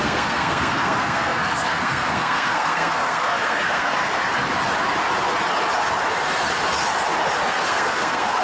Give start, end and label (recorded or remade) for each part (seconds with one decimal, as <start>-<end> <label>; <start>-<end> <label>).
0.0-4.2 remade; 4.2-7.5 recorded; 7.5-8.4 remade